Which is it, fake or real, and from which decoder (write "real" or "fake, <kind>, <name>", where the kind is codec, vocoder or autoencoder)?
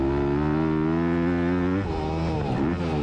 real